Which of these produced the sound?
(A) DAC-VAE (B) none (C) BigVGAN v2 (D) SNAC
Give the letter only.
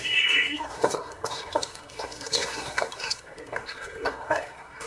D